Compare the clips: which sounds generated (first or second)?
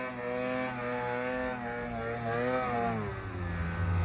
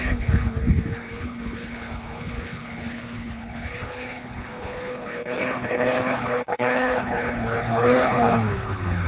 second